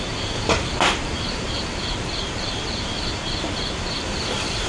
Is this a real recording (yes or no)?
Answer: no